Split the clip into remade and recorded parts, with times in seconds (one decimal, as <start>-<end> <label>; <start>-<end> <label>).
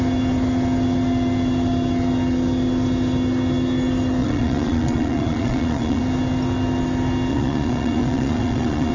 0.0-4.2 recorded; 4.2-6.0 remade; 6.0-7.3 recorded; 7.3-8.9 remade